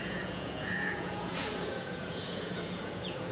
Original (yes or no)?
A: no